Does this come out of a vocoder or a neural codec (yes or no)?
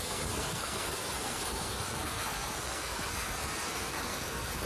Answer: yes